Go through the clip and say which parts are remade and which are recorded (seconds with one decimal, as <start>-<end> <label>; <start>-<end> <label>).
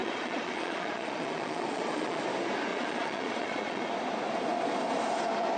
0.0-2.2 remade; 2.2-2.7 recorded; 2.7-3.9 remade; 3.9-5.6 recorded